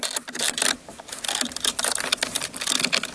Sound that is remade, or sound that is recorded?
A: recorded